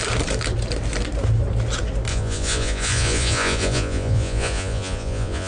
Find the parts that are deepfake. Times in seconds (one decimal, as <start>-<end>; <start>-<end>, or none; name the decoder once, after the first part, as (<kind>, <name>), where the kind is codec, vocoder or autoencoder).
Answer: 2.1-5.5 (vocoder, Vocos)